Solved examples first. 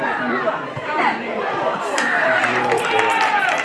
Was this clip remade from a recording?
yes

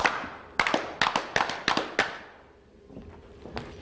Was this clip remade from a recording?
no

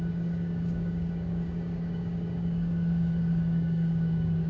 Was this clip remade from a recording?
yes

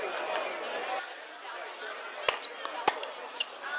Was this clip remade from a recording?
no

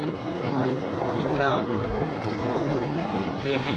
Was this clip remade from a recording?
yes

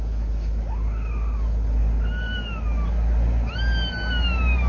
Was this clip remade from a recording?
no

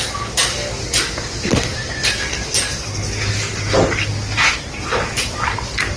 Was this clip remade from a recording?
no